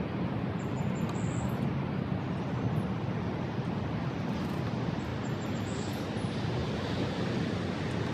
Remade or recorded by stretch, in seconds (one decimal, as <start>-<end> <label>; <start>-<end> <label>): 0.0-8.1 recorded